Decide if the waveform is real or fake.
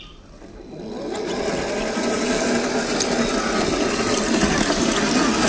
real